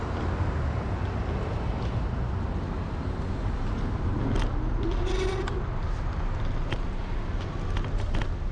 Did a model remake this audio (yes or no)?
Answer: no